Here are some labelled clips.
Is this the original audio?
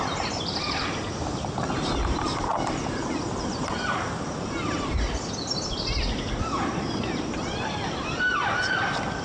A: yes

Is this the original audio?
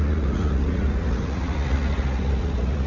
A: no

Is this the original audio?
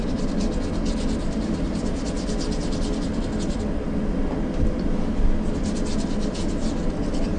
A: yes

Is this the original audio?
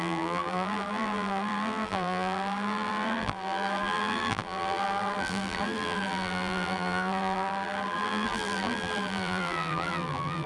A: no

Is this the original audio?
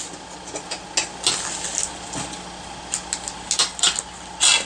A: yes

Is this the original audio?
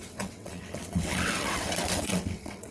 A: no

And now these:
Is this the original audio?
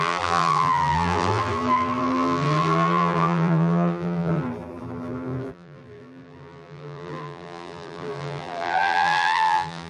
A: no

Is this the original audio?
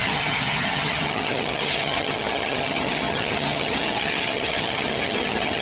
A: no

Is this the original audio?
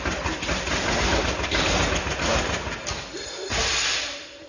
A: yes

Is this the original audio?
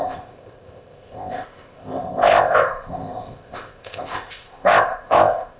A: no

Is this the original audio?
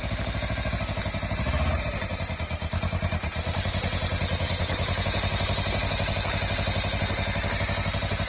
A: yes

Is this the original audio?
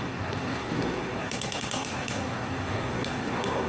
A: no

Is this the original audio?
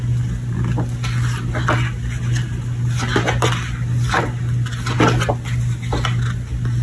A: yes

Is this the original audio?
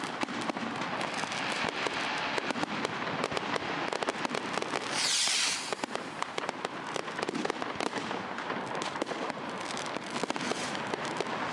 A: yes